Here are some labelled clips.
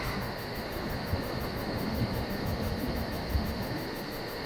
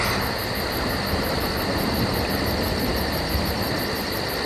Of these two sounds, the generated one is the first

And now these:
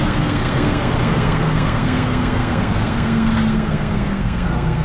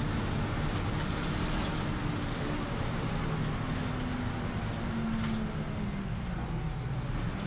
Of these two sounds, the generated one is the first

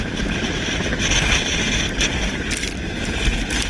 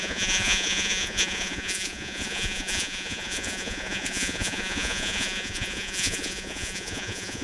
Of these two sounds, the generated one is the second